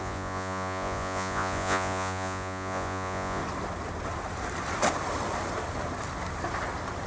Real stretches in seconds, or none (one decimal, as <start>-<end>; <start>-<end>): 3.4-7.1